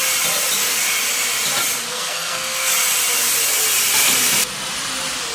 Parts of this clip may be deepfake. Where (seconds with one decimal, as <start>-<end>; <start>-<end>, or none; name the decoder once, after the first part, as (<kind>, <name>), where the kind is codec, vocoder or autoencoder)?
1.9-2.7 (codec, SNAC)